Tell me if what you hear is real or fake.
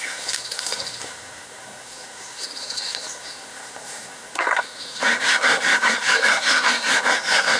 fake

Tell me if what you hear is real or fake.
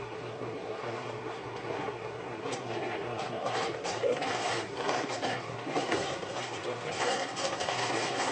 fake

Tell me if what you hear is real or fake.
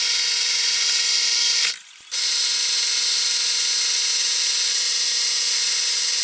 real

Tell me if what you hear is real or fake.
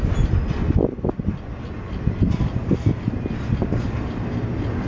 real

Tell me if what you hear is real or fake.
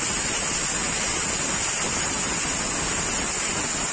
real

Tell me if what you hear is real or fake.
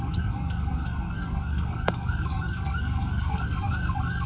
fake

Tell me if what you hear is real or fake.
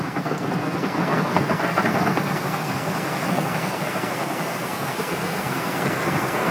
fake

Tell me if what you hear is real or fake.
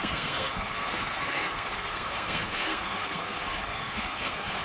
fake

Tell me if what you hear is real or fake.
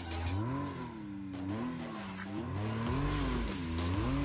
real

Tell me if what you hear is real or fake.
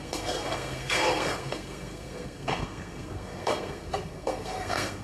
fake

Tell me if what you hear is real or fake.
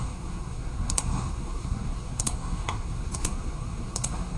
fake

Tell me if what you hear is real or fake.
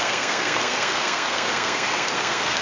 fake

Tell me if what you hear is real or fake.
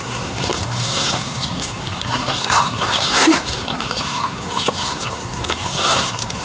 fake